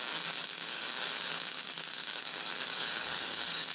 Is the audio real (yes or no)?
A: no